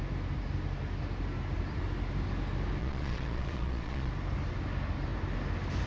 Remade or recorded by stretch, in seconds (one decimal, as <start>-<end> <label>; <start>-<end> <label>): 0.0-2.8 recorded; 2.8-4.1 remade; 4.1-5.9 recorded